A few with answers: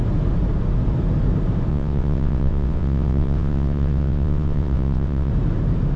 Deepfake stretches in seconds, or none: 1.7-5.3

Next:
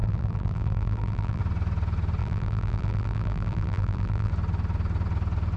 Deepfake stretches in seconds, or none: 0.0-1.4; 2.2-4.3

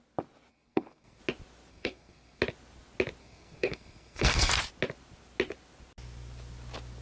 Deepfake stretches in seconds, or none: 0.5-1.2; 1.7-2.4; 3.2-4.5

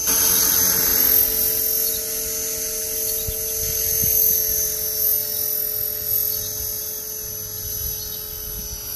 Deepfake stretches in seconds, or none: none

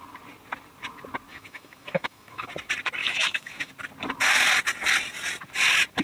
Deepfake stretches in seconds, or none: 1.3-2.5; 3.0-3.7

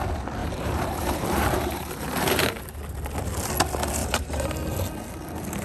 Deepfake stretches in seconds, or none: 0.4-2.6; 4.0-4.5

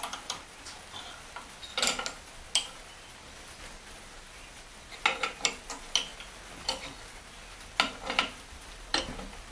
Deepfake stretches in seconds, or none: none